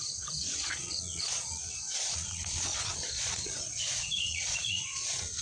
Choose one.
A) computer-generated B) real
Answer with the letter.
A